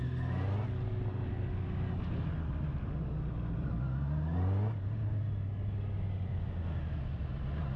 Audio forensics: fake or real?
real